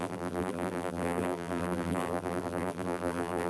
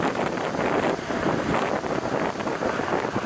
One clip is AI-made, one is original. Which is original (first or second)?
second